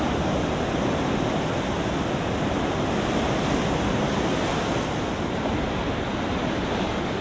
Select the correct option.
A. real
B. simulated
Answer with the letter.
A